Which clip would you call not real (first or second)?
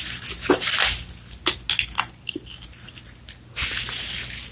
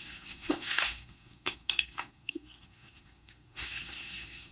second